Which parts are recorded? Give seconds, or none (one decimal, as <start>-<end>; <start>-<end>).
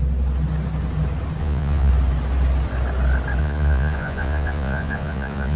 0.0-1.4; 1.9-3.4